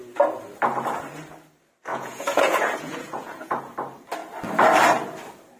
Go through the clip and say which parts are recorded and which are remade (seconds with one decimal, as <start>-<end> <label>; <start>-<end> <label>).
0.0-1.9 recorded; 1.9-3.6 remade; 3.6-5.6 recorded